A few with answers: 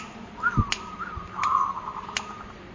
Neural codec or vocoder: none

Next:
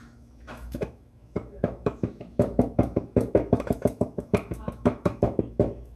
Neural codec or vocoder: autoencoder, DAC-VAE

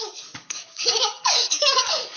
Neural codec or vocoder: codec, DAC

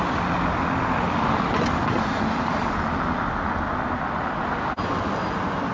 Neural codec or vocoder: none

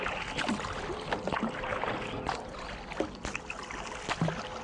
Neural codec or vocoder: none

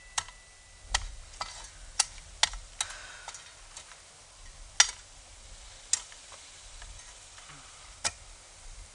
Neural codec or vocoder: none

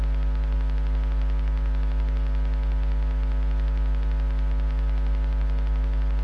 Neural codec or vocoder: none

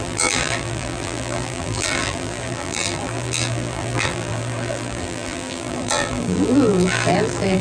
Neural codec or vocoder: vocoder, BigVGAN v2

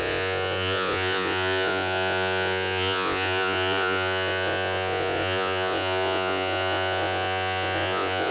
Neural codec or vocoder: vocoder, Vocos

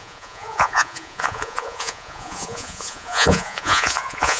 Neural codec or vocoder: vocoder, Vocos